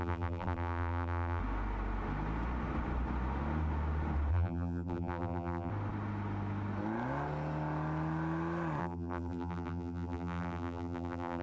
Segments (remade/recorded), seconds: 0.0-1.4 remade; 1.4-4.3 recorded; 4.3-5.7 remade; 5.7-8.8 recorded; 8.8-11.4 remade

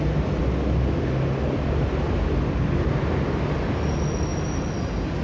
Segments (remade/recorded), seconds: 0.0-5.2 recorded

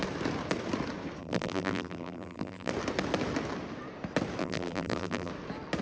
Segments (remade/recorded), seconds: 0.0-1.2 recorded; 1.2-2.7 remade; 2.7-4.4 recorded; 4.4-5.3 remade; 5.3-5.8 recorded